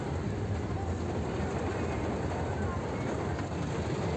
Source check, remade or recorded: recorded